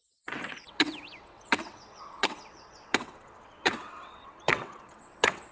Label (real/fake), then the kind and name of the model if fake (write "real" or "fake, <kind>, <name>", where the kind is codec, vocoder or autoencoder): fake, vocoder, WaveNeXt